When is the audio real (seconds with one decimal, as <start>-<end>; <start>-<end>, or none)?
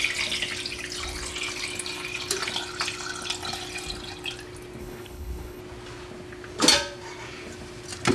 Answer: 0.0-4.8; 5.6-8.1